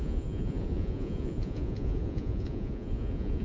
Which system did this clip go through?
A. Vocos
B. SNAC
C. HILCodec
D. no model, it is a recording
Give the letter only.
A